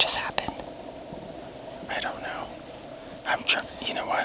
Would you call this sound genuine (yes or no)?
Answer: yes